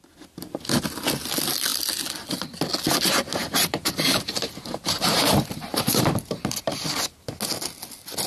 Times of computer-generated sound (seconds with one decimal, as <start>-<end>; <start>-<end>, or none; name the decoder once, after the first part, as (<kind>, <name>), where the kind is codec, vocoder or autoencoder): 3.4-6.7 (vocoder, BigVGAN v2)

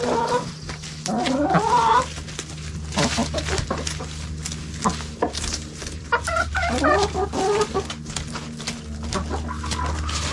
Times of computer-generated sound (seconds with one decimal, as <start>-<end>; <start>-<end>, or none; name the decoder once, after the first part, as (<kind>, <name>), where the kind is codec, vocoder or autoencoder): 5.2-6.8 (vocoder, BigVGAN v2)

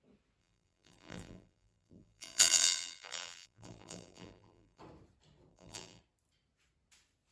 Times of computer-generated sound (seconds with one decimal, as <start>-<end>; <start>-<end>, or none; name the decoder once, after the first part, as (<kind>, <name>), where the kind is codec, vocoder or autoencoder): 0.4-4.8 (vocoder, BigVGAN v2); 5.5-6.0

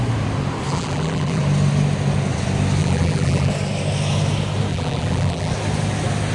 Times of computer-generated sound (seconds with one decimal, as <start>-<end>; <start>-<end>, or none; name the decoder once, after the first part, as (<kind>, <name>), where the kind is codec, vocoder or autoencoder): 0.7-1.4 (vocoder, BigVGAN v2); 2.8-3.5; 4.7-5.5

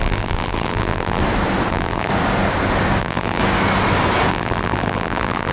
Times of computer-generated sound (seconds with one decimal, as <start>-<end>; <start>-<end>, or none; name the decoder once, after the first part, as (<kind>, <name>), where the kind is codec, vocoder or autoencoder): 0.0-1.2 (vocoder, BigVGAN v2); 1.7-2.1; 3.0-3.4; 4.3-5.5